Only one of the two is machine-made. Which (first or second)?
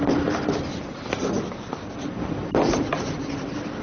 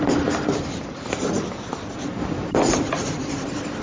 second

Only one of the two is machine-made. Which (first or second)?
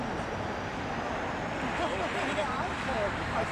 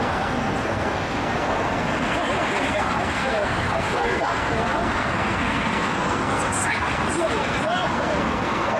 second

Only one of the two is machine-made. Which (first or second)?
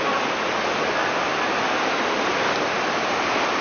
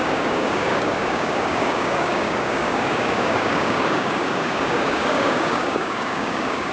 second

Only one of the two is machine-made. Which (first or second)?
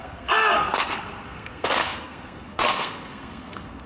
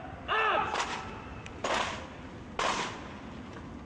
first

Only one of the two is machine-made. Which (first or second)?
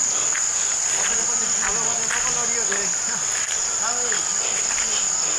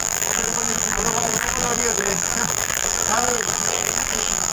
second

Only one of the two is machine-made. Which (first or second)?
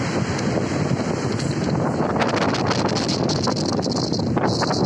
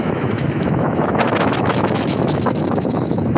second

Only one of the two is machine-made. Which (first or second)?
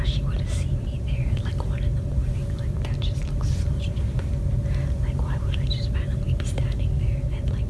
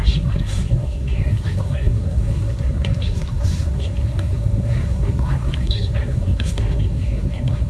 second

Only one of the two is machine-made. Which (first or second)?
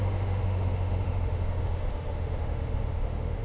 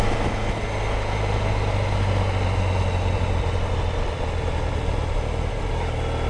first